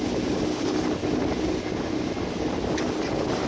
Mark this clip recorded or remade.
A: recorded